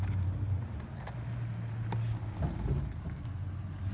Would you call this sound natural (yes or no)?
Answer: yes